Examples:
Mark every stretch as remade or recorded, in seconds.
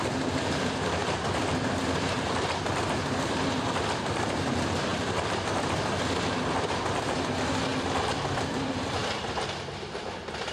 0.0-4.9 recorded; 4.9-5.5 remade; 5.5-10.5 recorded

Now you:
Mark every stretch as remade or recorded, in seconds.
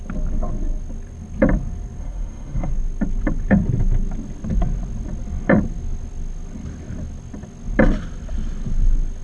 0.0-2.0 recorded; 2.0-2.7 remade; 2.7-9.2 recorded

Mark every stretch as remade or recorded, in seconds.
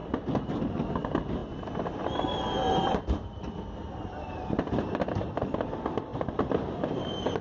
0.0-7.4 recorded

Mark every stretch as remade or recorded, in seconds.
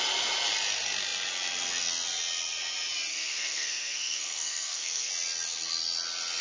0.0-3.1 recorded; 3.1-5.1 remade; 5.1-6.4 recorded